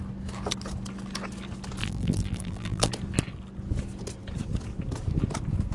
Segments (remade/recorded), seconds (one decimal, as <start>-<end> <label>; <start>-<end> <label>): 0.0-1.8 recorded; 1.8-2.9 remade; 2.9-5.7 recorded